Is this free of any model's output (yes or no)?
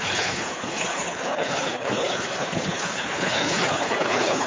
no